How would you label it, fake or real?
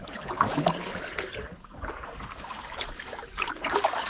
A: fake